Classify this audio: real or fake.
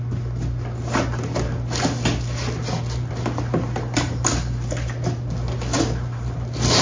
real